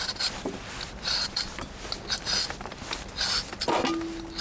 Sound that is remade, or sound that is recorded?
recorded